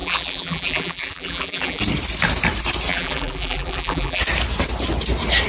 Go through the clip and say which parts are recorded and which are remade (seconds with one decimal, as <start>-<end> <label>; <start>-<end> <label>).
0.0-1.8 remade; 1.8-2.9 recorded; 2.9-4.2 remade; 4.2-5.5 recorded